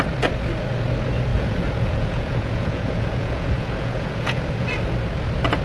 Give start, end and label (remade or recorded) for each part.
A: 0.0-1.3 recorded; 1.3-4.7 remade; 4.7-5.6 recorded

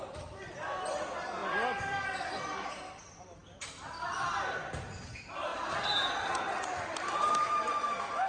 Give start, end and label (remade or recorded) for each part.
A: 0.0-1.4 remade; 1.4-2.4 recorded; 2.4-3.4 remade; 3.4-4.1 recorded; 4.1-8.3 remade

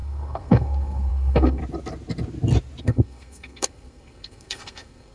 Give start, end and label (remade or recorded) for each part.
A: 0.0-1.6 remade; 1.6-2.8 recorded; 2.8-5.1 remade

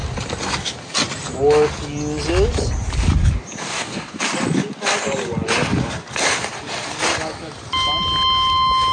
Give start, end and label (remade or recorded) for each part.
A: 0.0-3.6 recorded; 3.6-4.2 remade; 4.2-8.9 recorded

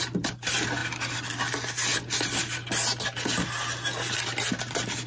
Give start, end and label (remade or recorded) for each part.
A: 0.0-5.1 recorded

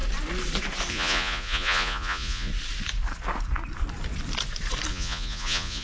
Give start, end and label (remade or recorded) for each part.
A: 0.0-0.9 recorded; 0.9-2.5 remade; 2.5-4.9 recorded; 4.9-5.8 remade